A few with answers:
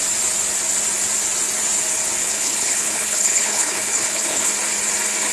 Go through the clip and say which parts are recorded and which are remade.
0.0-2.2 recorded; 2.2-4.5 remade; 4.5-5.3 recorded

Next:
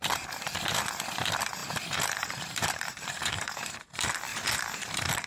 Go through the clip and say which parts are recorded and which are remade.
0.0-1.6 recorded; 1.6-3.7 remade; 3.7-4.3 recorded; 4.3-5.3 remade

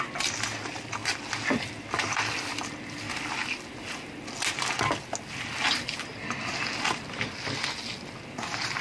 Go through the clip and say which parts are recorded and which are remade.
0.0-8.8 recorded

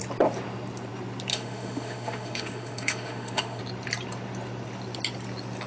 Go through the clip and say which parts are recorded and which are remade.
0.0-1.3 recorded; 1.3-3.6 remade; 3.6-5.7 recorded

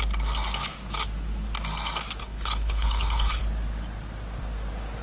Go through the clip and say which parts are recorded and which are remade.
0.0-2.2 recorded; 2.2-3.4 remade; 3.4-5.0 recorded

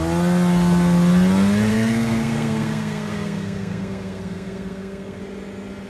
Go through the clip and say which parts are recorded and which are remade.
0.0-1.7 recorded; 1.7-5.2 remade; 5.2-5.9 recorded

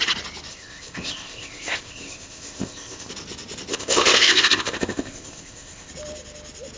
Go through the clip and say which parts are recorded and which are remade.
0.0-0.5 recorded; 0.5-3.1 remade; 3.1-3.7 recorded; 3.7-5.9 remade; 5.9-6.8 recorded

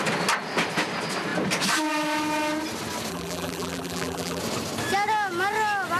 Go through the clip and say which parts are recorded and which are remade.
0.0-3.1 recorded; 3.1-4.4 remade; 4.4-6.0 recorded